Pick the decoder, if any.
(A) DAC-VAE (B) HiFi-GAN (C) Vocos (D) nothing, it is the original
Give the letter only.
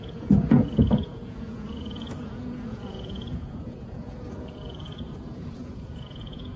C